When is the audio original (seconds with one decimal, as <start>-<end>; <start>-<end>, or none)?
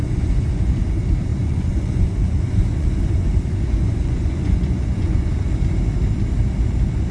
0.8-1.3; 5.3-7.1